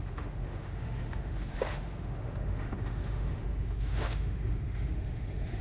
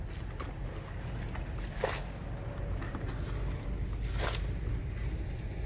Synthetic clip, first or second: first